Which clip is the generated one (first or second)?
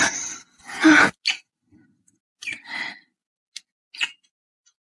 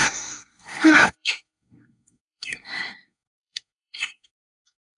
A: second